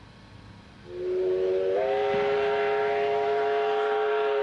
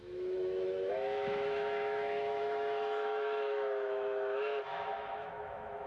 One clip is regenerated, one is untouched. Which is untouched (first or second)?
first